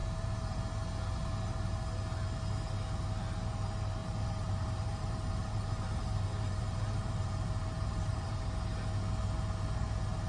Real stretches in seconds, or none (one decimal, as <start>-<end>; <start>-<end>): 0.6-4.0; 8.4-10.3